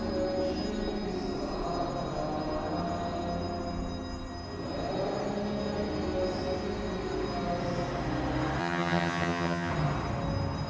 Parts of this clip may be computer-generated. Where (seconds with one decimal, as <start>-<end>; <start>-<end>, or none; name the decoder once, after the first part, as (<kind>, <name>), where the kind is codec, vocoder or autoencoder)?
8.6-9.7 (vocoder, HiFi-GAN)